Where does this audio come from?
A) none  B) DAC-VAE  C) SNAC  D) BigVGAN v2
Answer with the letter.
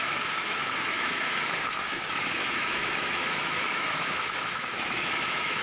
B